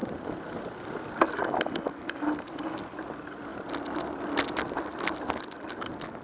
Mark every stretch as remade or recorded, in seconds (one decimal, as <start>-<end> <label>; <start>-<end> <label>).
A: 0.0-6.2 recorded